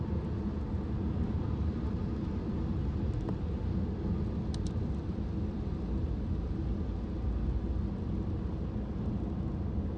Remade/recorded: recorded